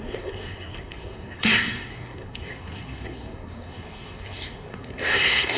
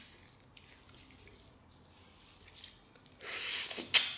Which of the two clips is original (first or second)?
second